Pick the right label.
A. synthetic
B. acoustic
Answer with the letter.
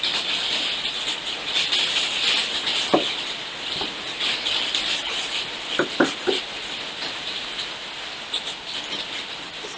B